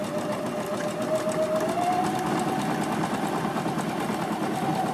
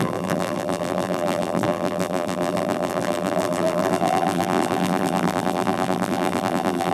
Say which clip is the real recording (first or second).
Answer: first